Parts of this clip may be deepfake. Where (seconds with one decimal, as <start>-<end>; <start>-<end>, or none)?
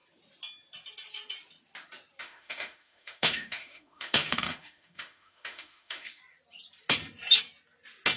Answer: 2.2-6.2